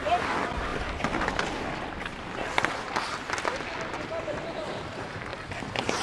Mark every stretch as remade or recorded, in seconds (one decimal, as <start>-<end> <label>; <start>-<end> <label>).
0.0-6.0 recorded